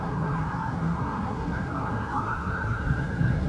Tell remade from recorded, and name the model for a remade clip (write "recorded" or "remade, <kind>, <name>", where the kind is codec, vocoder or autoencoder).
remade, codec, SNAC